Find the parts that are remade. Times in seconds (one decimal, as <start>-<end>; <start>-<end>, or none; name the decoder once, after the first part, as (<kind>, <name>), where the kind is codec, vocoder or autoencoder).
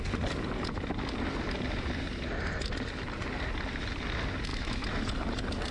4.5-5.0 (autoencoder, DAC-VAE)